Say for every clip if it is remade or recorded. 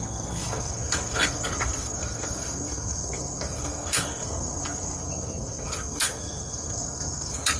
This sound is remade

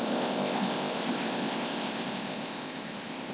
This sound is remade